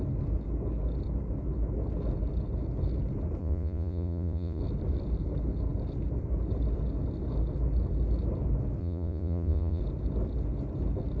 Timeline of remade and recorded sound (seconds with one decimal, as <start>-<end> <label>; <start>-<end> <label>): 0.0-3.4 recorded; 3.4-4.6 remade; 4.6-8.8 recorded; 8.8-9.8 remade; 9.8-11.2 recorded